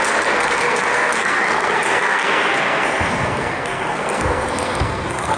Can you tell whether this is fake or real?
fake